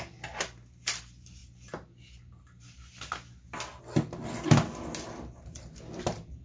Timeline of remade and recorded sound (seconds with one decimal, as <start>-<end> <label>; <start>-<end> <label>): 0.0-6.4 recorded